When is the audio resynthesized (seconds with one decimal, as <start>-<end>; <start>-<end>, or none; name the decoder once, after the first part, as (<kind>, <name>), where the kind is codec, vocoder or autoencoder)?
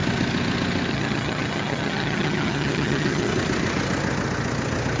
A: 0.9-3.3 (vocoder, HiFi-GAN)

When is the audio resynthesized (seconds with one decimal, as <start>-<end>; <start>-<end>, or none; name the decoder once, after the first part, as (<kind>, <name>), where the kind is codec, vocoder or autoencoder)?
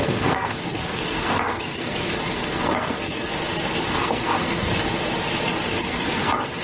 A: 0.0-3.3 (codec, SNAC); 3.8-4.7; 5.7-6.6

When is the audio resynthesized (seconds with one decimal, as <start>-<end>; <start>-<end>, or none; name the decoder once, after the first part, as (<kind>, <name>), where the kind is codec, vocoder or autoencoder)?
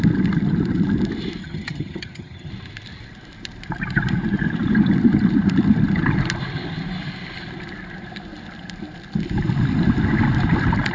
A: 1.4-2.5 (vocoder, HiFi-GAN)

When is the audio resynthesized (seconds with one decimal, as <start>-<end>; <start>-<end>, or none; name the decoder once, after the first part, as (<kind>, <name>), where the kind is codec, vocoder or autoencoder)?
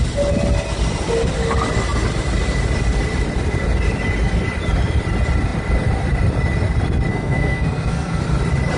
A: 7.1-8.2 (codec, SNAC)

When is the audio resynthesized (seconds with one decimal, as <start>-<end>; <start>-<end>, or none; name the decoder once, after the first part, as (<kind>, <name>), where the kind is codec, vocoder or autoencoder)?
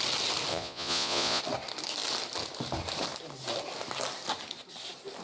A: 0.5-1.4 (vocoder, Vocos)